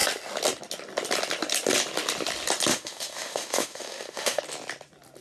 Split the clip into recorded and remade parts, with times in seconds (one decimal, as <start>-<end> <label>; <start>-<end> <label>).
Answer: 0.0-2.7 recorded; 2.7-4.4 remade; 4.4-5.2 recorded

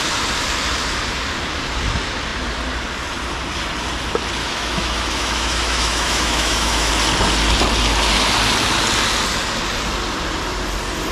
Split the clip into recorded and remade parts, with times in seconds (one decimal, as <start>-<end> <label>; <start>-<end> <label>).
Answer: 0.0-4.4 recorded; 4.4-6.9 remade; 6.9-11.1 recorded